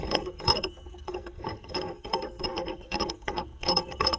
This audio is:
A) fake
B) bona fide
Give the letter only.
A